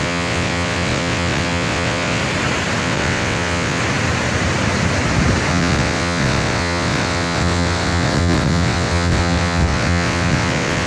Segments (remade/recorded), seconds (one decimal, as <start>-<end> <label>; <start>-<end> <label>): 0.0-2.2 remade; 2.2-2.8 recorded; 2.8-3.8 remade; 3.8-5.5 recorded; 5.5-10.9 remade